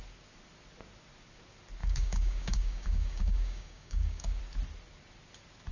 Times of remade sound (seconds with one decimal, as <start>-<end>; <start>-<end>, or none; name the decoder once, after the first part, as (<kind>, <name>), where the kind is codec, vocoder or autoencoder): 1.8-4.4 (codec, DAC)